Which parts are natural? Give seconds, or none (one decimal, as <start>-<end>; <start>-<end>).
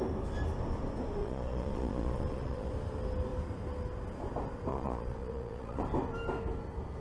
0.0-1.2; 2.7-4.7; 5.8-7.0